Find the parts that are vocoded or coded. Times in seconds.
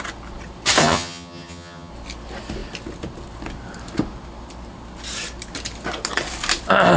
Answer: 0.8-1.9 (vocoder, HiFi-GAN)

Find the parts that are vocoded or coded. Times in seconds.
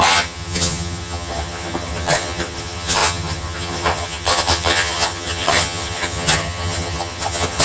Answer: 0.0-7.6 (vocoder, HiFi-GAN)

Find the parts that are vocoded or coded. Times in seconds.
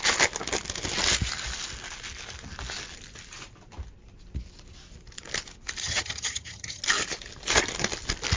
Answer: 5.8-6.8 (vocoder, HiFi-GAN)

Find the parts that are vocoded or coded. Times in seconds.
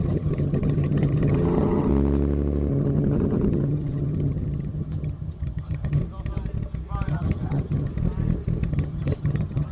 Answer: 0.0-1.9 (vocoder, HiFi-GAN); 2.7-6.0; 7.1-7.9; 8.7-9.7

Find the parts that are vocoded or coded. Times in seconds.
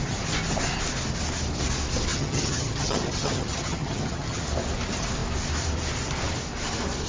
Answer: 2.1-4.4 (vocoder, HiFi-GAN)